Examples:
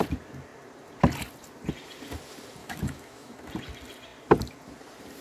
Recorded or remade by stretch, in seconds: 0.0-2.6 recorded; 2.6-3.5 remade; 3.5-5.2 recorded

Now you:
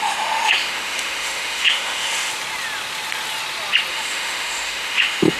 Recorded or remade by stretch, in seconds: 0.0-2.3 remade; 2.3-3.9 recorded; 3.9-5.4 remade

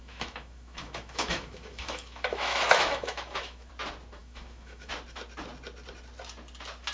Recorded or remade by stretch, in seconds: 0.0-3.7 remade; 3.7-4.2 recorded; 4.2-4.9 remade; 4.9-6.9 recorded

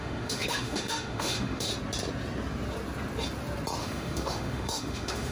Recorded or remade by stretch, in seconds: 0.0-1.7 remade; 1.7-3.8 recorded; 3.8-5.3 remade

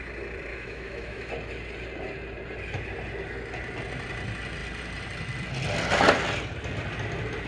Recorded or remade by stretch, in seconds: 0.0-0.5 recorded; 0.5-1.3 remade; 1.3-7.5 recorded